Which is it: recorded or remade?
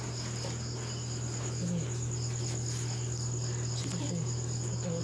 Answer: recorded